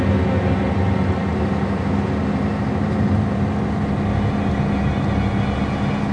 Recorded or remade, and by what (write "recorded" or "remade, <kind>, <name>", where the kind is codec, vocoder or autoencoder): recorded